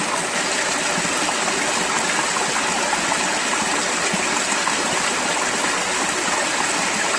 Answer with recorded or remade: recorded